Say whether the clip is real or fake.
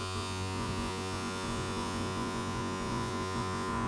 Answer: fake